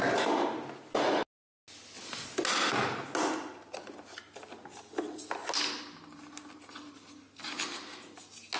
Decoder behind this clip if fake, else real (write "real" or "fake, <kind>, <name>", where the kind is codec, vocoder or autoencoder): real